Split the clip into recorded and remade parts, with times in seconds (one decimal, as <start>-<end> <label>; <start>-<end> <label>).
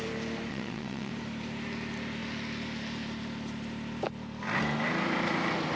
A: 0.0-0.5 recorded; 0.5-1.1 remade; 1.1-5.8 recorded